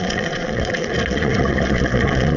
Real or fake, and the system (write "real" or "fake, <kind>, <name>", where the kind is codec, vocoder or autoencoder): fake, vocoder, Vocos